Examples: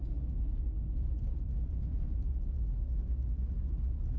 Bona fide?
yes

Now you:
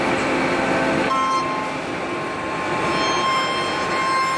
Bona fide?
yes